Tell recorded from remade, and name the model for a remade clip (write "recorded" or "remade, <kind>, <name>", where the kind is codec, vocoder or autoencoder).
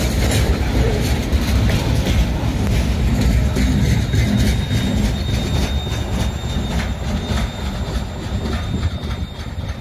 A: recorded